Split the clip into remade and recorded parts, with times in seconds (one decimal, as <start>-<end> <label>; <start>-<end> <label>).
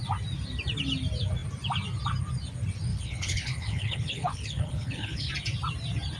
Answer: 0.0-2.9 recorded; 2.9-5.3 remade; 5.3-6.2 recorded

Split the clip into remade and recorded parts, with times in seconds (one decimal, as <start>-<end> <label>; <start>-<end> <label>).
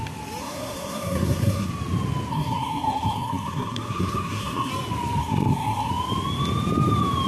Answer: 0.0-0.4 recorded; 0.4-1.7 remade; 1.7-2.3 recorded; 2.3-4.7 remade; 4.7-5.2 recorded; 5.2-5.9 remade; 5.9-7.3 recorded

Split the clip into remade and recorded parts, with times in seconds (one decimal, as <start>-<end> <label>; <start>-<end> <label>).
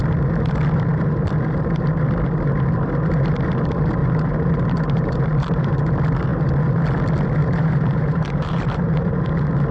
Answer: 0.0-4.0 recorded; 4.0-5.7 remade; 5.7-7.4 recorded; 7.4-9.1 remade; 9.1-9.7 recorded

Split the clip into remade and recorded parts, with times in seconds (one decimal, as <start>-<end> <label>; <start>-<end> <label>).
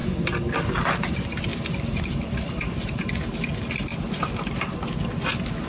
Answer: 0.0-5.7 recorded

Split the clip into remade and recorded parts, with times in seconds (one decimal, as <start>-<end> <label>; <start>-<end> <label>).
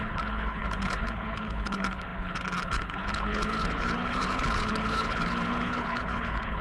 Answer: 0.0-6.6 remade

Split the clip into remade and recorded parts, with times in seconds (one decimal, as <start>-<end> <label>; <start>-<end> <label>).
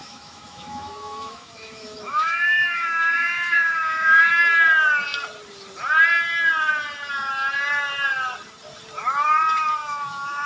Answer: 0.0-4.3 remade; 4.3-9.8 recorded; 9.8-10.5 remade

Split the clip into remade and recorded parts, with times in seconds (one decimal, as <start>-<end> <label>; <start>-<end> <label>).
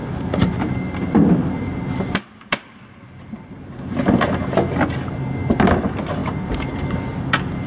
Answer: 0.0-4.0 remade; 4.0-6.2 recorded; 6.2-7.7 remade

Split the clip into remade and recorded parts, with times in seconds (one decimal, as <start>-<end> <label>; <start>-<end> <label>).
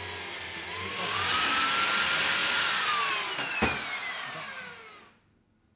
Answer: 0.0-0.9 recorded; 0.9-1.5 remade; 1.5-5.8 recorded